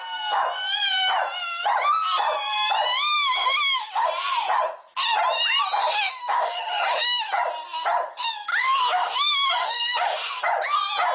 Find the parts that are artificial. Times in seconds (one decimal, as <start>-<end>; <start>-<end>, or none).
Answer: 3.1-4.1; 5.8-7.3; 8.5-10.4